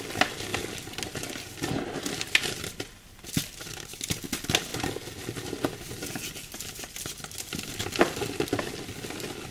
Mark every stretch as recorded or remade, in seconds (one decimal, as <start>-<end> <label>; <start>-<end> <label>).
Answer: 0.0-9.5 recorded

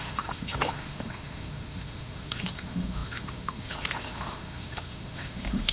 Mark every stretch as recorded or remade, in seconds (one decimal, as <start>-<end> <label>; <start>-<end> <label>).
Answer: 0.0-5.7 remade

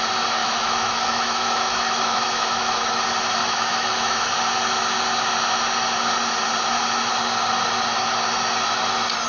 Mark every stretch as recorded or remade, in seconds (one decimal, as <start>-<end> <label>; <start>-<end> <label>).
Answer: 0.0-0.4 recorded; 0.4-3.0 remade; 3.0-3.4 recorded; 3.4-4.3 remade; 4.3-9.3 recorded

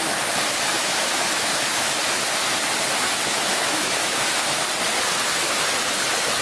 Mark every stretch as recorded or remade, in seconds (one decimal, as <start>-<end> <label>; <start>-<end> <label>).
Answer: 0.0-0.8 recorded; 0.8-1.9 remade; 1.9-3.3 recorded; 3.3-4.6 remade; 4.6-6.4 recorded